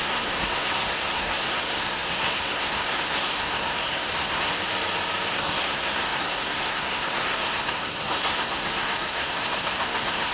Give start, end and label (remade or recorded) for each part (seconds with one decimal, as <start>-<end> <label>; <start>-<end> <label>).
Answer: 0.0-4.6 remade; 4.6-5.3 recorded; 5.3-10.3 remade